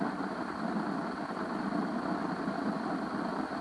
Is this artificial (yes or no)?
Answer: no